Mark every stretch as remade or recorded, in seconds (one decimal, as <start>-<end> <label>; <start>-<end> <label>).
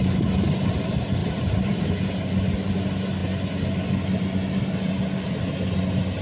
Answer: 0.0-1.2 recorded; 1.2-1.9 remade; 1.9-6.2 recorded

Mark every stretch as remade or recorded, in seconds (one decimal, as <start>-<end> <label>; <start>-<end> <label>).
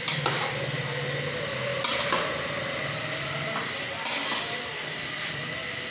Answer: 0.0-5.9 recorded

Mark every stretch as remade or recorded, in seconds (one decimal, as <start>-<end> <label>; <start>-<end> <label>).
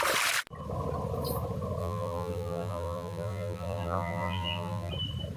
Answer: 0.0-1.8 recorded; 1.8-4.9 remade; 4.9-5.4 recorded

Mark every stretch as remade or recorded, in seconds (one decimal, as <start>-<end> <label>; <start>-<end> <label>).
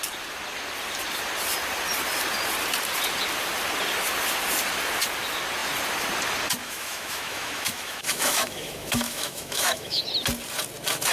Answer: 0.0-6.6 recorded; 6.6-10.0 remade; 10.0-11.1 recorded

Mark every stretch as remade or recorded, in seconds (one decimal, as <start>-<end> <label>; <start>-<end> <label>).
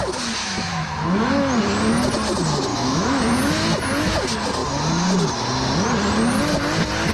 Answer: 0.0-0.4 recorded; 0.4-1.5 remade; 1.5-2.7 recorded; 2.7-3.5 remade; 3.5-7.1 recorded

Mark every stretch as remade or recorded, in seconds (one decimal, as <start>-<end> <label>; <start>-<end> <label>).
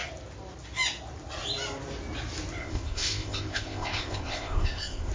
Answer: 0.0-2.6 recorded; 2.6-5.1 remade